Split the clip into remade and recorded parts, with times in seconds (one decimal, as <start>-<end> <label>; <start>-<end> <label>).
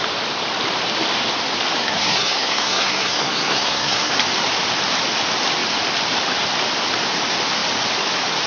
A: 0.0-1.8 recorded; 1.8-4.1 remade; 4.1-8.5 recorded